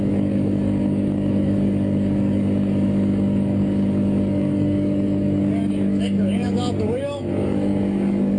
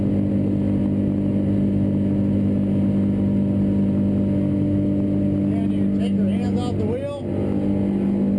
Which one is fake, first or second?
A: first